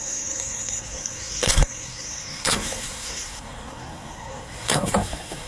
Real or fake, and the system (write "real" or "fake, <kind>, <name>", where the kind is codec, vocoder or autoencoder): fake, codec, SNAC